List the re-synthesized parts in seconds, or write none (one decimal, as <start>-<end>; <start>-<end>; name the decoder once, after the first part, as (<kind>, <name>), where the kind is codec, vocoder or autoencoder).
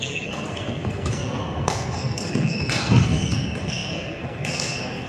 0.0-5.1 (codec, SNAC)